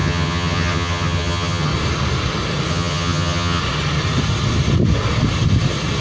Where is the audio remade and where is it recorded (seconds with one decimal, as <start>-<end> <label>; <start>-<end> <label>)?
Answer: 0.0-1.7 remade; 1.7-2.7 recorded; 2.7-3.6 remade; 3.6-6.0 recorded